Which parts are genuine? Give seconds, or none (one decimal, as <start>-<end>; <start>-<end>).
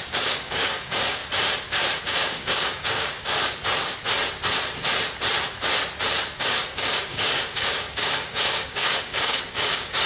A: 1.2-2.0; 3.4-6.4